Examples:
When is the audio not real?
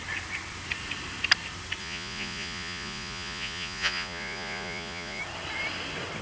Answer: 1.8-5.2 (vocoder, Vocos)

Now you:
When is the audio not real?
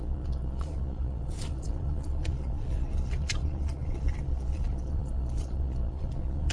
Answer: 0.0-6.5 (vocoder, Vocos)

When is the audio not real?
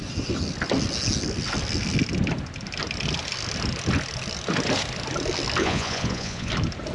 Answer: 5.6-6.5 (vocoder, Vocos)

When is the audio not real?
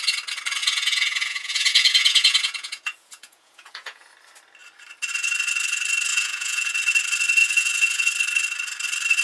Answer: 0.6-4.1 (vocoder, Vocos); 6.1-6.8; 7.4-8.1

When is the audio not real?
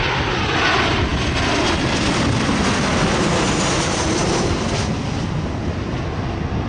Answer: none